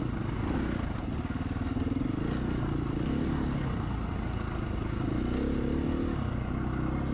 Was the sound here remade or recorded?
recorded